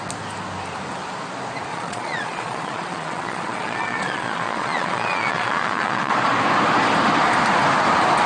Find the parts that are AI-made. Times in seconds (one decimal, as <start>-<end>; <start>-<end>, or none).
1.7-6.1